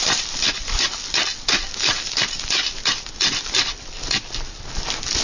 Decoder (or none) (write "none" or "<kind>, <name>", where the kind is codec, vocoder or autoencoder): vocoder, BigVGAN v2